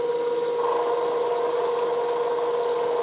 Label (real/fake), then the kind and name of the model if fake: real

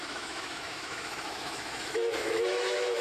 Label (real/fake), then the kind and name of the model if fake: fake, autoencoder, DAC-VAE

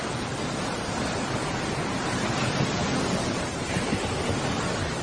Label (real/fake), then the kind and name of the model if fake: fake, vocoder, BigVGAN v2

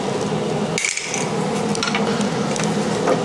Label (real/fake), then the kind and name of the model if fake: real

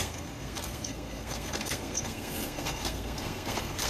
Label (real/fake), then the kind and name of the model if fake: fake, codec, SNAC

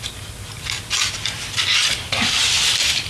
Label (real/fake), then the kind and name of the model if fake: real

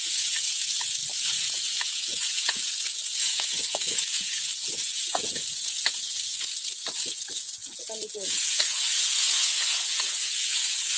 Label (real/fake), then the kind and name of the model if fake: fake, vocoder, Vocos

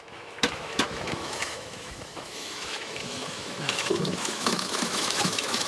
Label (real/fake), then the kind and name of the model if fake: fake, autoencoder, DAC-VAE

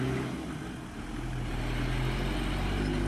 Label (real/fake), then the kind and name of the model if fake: real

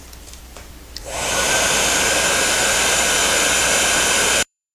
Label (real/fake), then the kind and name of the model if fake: fake, vocoder, BigVGAN v2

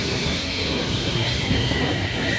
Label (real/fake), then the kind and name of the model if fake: fake, codec, SNAC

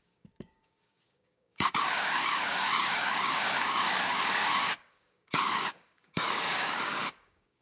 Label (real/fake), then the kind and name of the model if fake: fake, codec, DAC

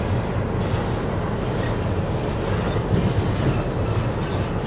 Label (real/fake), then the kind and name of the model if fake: real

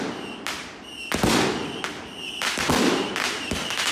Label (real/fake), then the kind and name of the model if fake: real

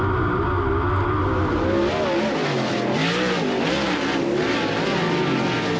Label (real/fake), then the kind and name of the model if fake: real